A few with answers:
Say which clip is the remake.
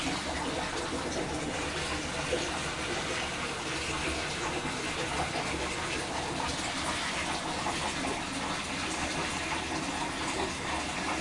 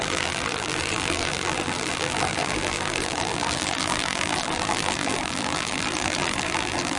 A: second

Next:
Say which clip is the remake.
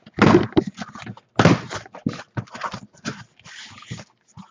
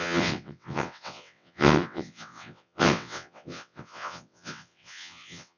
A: second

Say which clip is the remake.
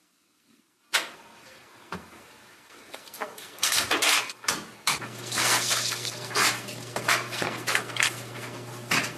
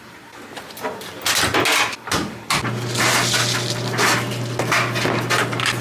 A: first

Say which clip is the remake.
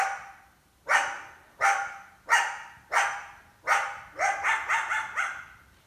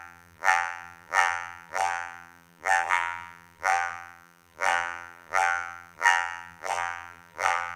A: second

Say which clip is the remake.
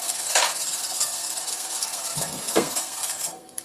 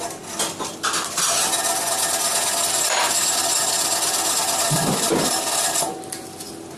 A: first